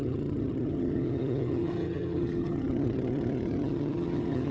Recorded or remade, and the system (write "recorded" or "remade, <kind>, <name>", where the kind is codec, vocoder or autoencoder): remade, vocoder, HiFi-GAN